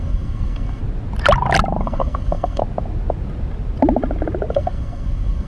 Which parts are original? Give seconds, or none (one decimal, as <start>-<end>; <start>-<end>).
0.8-1.8; 2.6-4.5